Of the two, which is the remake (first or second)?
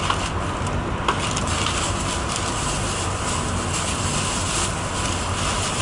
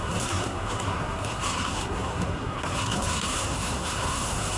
second